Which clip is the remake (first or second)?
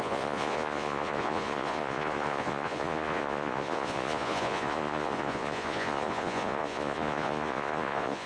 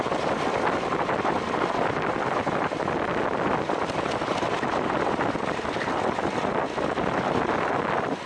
first